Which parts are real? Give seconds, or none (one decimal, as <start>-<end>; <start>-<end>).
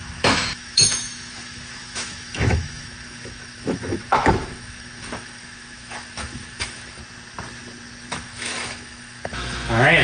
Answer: 7.0-8.1